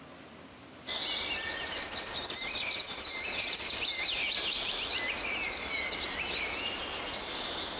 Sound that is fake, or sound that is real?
real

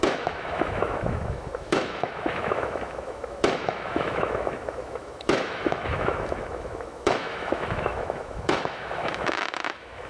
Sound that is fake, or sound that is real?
fake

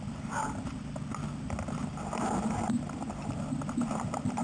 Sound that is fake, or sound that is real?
real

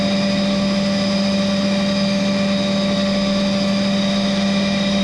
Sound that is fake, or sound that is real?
real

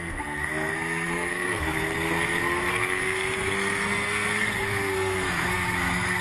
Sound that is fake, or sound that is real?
fake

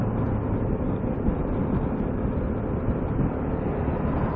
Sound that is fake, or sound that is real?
real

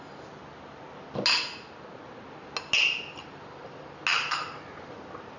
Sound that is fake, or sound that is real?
real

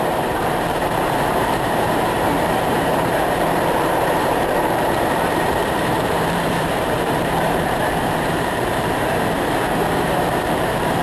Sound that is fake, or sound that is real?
fake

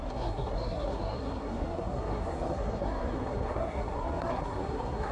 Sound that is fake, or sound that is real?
fake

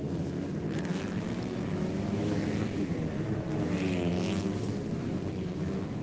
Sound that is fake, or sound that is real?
fake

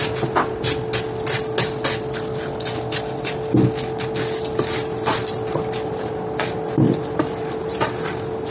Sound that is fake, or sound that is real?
real